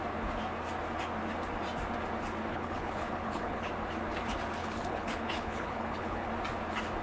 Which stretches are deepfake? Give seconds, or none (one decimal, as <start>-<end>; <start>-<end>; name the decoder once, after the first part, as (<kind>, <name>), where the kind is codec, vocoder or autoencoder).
2.5-3.7 (codec, HILCodec); 4.6-6.3